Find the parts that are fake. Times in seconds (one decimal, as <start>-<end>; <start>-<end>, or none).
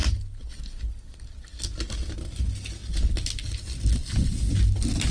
none